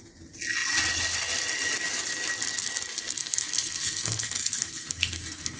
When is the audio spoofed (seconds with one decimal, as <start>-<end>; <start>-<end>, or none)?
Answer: 3.2-5.6